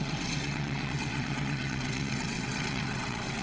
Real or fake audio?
fake